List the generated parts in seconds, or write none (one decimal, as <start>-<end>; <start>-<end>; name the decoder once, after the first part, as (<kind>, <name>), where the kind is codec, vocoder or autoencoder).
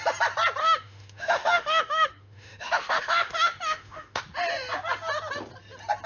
0.6-4.2 (autoencoder, DAC-VAE)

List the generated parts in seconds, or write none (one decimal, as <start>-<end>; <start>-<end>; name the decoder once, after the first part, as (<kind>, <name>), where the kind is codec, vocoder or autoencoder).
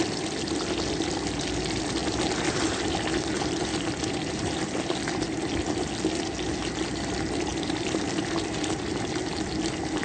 2.0-5.0 (vocoder, BigVGAN v2); 7.5-8.3; 8.9-10.0